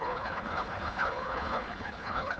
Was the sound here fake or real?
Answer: fake